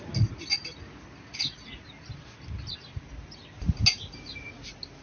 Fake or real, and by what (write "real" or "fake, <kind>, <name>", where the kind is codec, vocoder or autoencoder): real